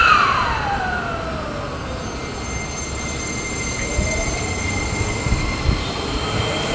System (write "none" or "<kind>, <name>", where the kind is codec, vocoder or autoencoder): none